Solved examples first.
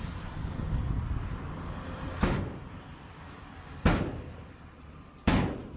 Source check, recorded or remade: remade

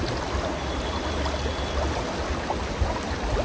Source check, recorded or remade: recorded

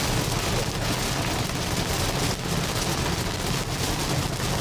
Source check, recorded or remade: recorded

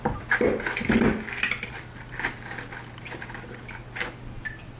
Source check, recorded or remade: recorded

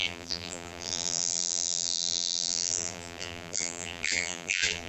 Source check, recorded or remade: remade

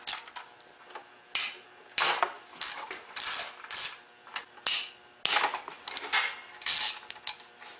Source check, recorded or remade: recorded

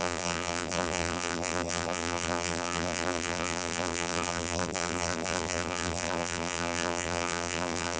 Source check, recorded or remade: remade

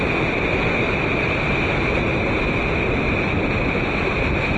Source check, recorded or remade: recorded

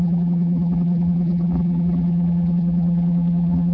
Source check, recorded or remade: remade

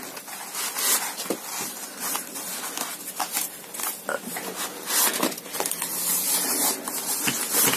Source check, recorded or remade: recorded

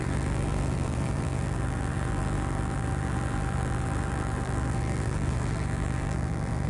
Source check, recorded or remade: remade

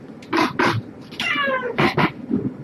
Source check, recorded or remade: recorded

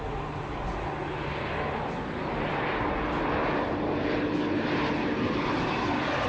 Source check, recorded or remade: recorded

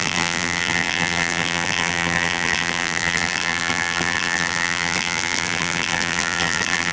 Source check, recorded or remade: remade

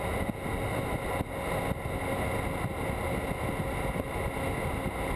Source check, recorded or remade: recorded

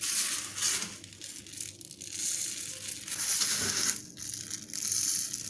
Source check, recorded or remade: recorded